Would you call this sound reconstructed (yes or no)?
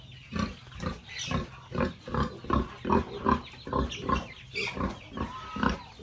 no